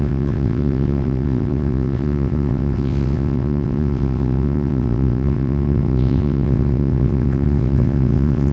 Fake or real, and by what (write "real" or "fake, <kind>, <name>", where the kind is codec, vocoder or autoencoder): fake, vocoder, WaveNeXt